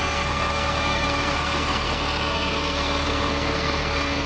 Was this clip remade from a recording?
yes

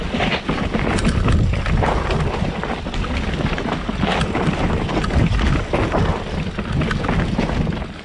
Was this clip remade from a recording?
no